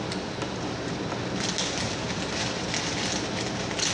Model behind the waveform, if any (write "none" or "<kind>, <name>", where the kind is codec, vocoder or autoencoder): none